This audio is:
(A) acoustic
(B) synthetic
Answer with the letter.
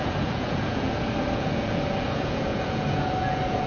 B